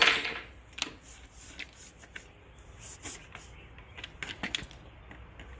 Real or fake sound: real